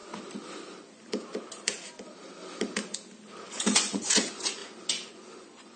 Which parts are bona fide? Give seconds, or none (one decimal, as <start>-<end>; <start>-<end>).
0.0-3.5; 4.6-5.1